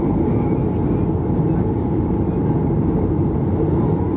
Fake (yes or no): no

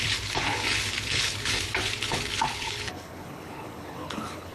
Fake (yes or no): yes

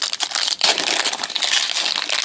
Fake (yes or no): no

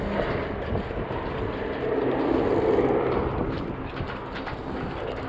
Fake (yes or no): no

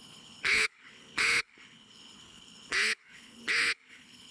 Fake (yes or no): yes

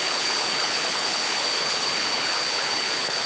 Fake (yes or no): yes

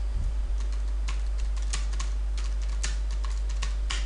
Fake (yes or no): no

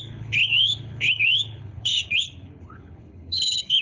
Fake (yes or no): yes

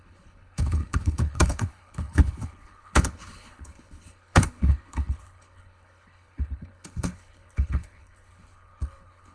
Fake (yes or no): yes